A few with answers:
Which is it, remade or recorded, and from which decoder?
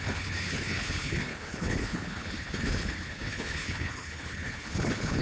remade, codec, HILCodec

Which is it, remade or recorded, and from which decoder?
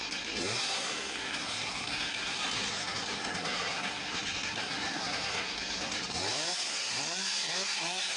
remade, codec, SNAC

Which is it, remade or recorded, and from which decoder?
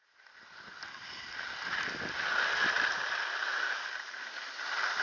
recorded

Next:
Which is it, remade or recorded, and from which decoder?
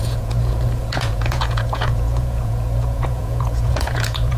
remade, vocoder, Vocos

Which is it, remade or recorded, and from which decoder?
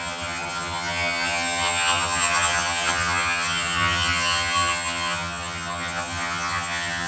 remade, vocoder, HiFi-GAN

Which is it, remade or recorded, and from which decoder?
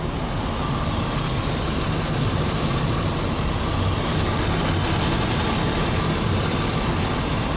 recorded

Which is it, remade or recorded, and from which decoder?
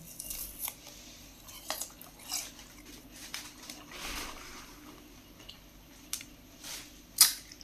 recorded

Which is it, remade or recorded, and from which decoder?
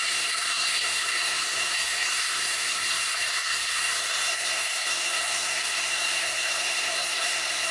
remade, codec, SNAC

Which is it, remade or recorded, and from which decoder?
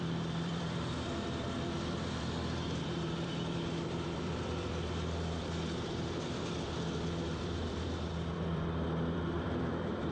remade, vocoder, BigVGAN v2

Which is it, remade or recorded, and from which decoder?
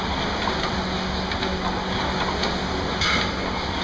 recorded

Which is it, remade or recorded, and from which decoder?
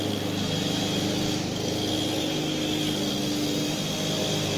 recorded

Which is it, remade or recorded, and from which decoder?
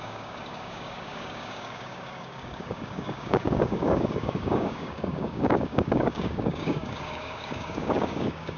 remade, codec, DAC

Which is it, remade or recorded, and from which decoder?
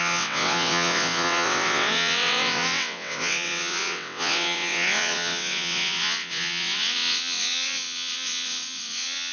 remade, vocoder, WaveNeXt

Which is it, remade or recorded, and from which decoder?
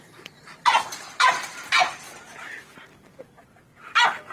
remade, vocoder, BigVGAN v2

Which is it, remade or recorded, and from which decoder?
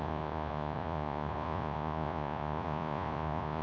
remade, vocoder, Vocos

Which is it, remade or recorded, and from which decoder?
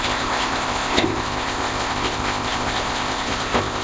remade, codec, ZipCodec